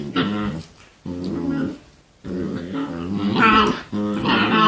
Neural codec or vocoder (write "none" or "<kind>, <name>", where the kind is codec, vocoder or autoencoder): none